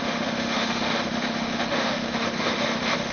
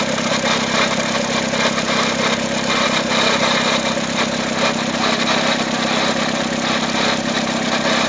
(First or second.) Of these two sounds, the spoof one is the first